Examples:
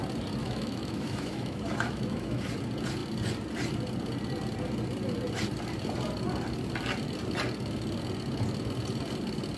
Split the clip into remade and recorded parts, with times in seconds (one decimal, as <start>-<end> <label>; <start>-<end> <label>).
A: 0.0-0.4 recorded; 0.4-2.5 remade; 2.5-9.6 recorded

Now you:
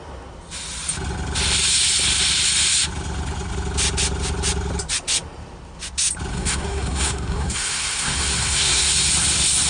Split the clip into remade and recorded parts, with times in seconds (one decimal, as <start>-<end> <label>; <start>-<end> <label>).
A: 0.0-6.3 recorded; 6.3-9.1 remade; 9.1-9.7 recorded

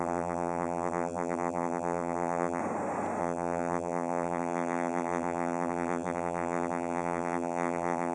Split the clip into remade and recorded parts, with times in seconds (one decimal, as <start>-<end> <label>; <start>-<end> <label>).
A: 0.0-2.6 remade; 2.6-3.2 recorded; 3.2-8.1 remade